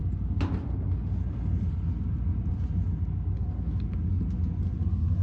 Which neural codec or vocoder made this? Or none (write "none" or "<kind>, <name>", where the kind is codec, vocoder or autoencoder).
none